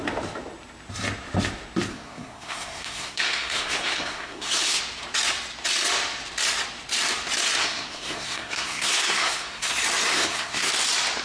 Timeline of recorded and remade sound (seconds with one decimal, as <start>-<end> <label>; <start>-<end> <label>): 0.0-1.9 recorded; 1.9-4.8 remade; 4.8-7.6 recorded; 7.6-9.7 remade; 9.7-10.1 recorded; 10.1-10.7 remade; 10.7-11.2 recorded